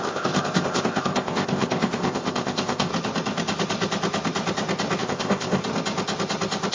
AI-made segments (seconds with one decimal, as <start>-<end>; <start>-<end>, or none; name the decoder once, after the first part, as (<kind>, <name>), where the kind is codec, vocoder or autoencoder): 0.0-2.9 (codec, ZipCodec); 5.0-5.6